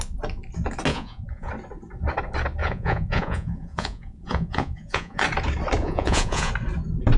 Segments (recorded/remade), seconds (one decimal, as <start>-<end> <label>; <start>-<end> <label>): 0.0-0.9 recorded; 0.9-1.5 remade; 1.5-2.6 recorded; 2.6-5.2 remade; 5.2-5.8 recorded; 5.8-6.5 remade; 6.5-7.2 recorded